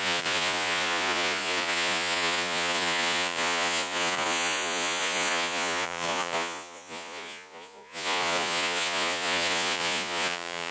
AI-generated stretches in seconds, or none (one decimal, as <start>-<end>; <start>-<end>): 0.0-10.7